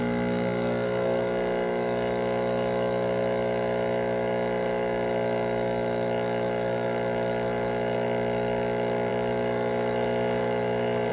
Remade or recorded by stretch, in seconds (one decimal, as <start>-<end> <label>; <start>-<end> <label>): 0.0-11.1 remade